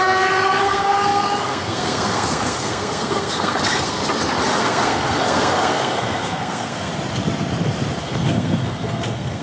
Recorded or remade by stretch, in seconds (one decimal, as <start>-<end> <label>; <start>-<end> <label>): 0.0-4.0 remade; 4.0-4.6 recorded; 4.6-6.9 remade; 6.9-8.0 recorded; 8.0-9.4 remade